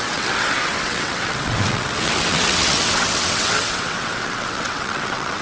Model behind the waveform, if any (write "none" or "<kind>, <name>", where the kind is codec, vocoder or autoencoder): vocoder, WaveNeXt